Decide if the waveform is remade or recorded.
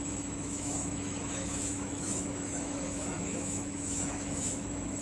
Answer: remade